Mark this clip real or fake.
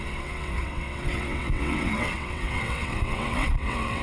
fake